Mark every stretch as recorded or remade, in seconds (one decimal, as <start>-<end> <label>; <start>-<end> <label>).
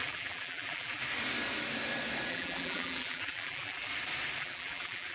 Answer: 0.0-1.0 remade; 1.0-2.3 recorded; 2.3-3.9 remade; 3.9-4.4 recorded; 4.4-5.1 remade